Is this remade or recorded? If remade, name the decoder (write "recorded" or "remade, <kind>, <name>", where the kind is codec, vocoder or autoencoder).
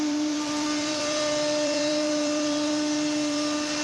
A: remade, vocoder, BigVGAN v2